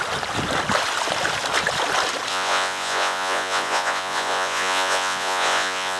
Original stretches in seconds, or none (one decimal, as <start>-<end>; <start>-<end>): 0.0-2.3